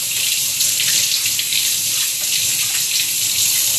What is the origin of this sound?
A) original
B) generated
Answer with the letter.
A